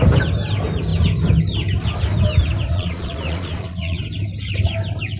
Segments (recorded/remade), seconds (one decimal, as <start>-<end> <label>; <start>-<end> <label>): 0.0-2.7 recorded; 2.7-4.0 remade; 4.0-5.2 recorded